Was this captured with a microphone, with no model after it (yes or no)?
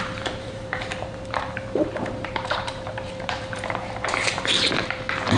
no